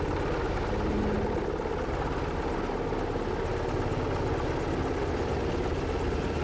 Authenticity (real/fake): real